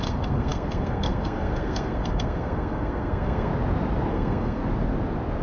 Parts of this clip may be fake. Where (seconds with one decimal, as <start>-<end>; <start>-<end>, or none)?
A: 0.0-3.5; 4.1-4.6